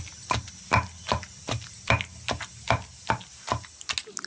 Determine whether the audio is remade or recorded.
recorded